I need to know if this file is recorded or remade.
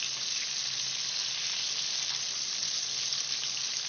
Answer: recorded